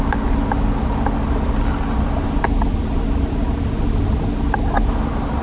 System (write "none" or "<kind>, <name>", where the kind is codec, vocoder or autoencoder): none